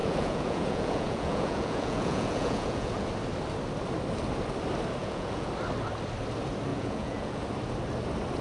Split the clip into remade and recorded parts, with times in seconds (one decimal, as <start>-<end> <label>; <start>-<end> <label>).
0.0-3.1 remade; 3.1-5.0 recorded; 5.0-5.5 remade; 5.5-6.7 recorded; 6.7-7.4 remade; 7.4-8.4 recorded